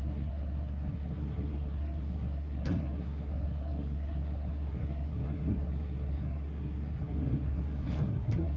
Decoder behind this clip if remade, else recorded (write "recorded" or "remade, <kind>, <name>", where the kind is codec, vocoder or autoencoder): remade, codec, SNAC